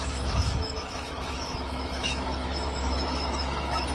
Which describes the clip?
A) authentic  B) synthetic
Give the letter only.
B